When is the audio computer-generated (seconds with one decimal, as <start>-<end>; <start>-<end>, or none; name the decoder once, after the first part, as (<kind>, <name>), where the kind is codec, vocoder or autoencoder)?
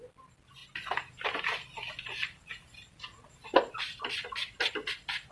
none